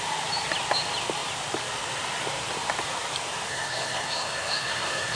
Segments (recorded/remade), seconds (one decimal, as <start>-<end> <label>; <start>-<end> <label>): 0.0-3.5 recorded; 3.5-5.2 remade